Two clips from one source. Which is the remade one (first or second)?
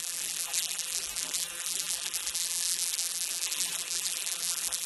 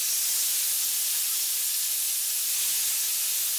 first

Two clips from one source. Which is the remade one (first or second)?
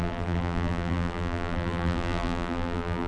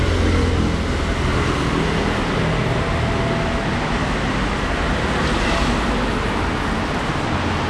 first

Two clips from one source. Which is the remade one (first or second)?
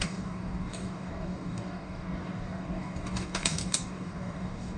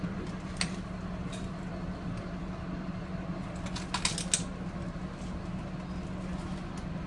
first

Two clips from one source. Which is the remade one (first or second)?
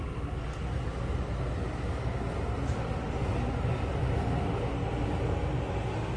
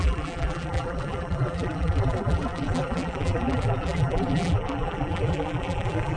second